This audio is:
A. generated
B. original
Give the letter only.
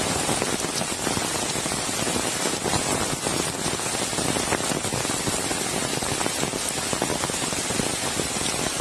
B